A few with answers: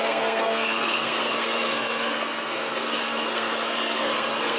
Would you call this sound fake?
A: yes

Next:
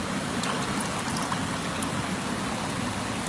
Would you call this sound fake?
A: no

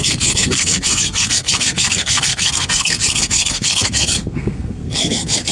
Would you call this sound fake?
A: yes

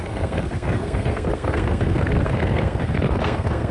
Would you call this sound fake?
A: yes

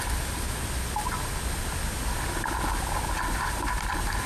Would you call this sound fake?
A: no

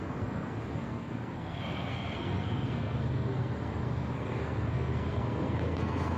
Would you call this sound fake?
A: yes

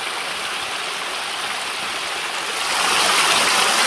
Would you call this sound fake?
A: no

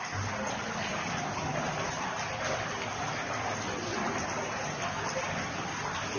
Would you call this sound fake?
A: no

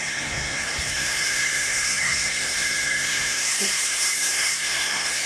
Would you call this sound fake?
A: yes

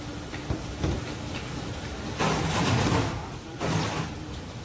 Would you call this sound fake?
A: no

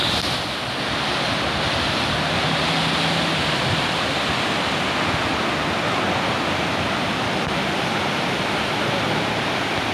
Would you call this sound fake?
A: no